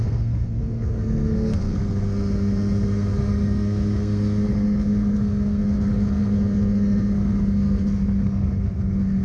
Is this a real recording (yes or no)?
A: no